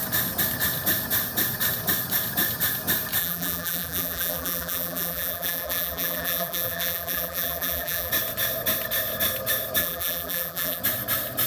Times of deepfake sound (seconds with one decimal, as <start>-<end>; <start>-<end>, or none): 3.2-8.1; 9.8-10.8